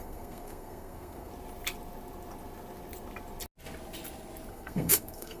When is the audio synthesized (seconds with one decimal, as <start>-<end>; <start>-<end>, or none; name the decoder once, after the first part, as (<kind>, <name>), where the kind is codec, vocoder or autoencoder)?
0.0-1.3 (codec, SNAC); 4.5-5.4